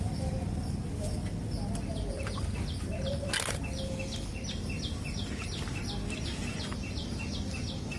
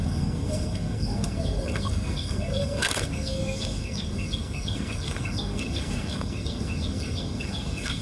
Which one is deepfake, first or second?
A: second